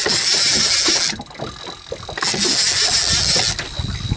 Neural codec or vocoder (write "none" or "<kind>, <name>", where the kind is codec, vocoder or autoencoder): none